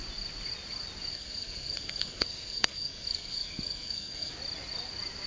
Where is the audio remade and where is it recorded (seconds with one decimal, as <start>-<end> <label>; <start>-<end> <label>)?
0.0-1.1 recorded; 1.1-4.3 remade; 4.3-5.3 recorded